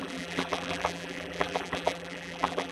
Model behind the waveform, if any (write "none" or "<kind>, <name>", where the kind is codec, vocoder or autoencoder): vocoder, BigVGAN v2